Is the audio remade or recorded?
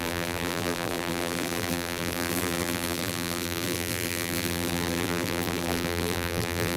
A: remade